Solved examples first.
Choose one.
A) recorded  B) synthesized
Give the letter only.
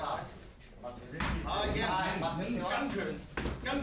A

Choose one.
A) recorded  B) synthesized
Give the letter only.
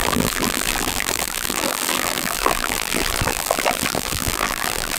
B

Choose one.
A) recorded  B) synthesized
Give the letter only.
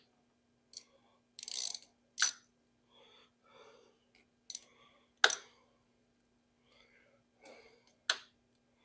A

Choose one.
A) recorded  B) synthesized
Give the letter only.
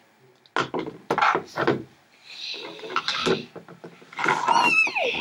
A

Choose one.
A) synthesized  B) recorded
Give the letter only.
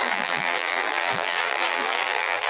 A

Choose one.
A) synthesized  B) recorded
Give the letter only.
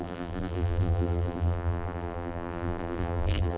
A